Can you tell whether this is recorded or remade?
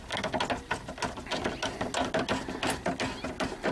recorded